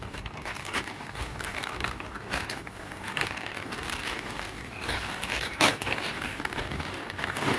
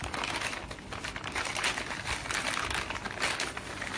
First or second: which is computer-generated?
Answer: first